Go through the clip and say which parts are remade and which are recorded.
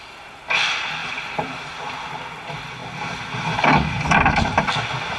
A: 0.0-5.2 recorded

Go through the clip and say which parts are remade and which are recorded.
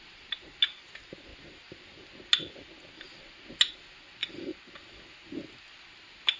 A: 0.0-6.4 recorded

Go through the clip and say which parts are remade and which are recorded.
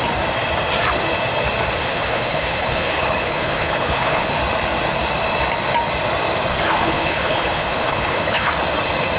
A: 0.0-1.8 recorded; 1.8-4.4 remade; 4.4-6.8 recorded; 6.8-8.5 remade; 8.5-9.2 recorded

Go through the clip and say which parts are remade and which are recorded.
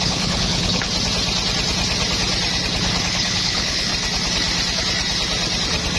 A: 0.0-0.9 remade; 0.9-3.1 recorded; 3.1-3.9 remade; 3.9-6.0 recorded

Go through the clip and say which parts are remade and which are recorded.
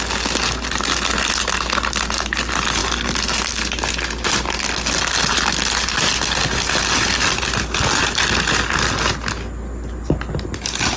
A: 0.0-11.0 recorded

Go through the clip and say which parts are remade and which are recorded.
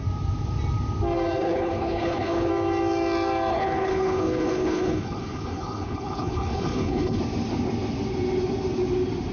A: 0.0-1.4 recorded; 1.4-2.5 remade; 2.5-3.5 recorded; 3.5-7.2 remade; 7.2-9.3 recorded